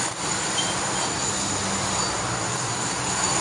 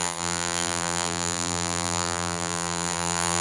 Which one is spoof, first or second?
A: second